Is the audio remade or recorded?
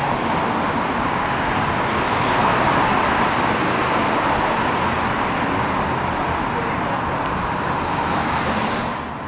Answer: recorded